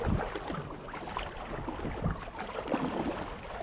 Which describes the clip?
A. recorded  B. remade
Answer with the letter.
A